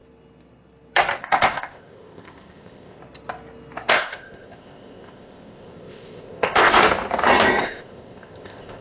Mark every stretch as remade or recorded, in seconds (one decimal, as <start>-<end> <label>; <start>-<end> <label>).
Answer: 0.0-1.2 recorded; 1.2-3.0 remade; 3.0-3.9 recorded; 3.9-6.8 remade; 6.8-7.6 recorded; 7.6-8.8 remade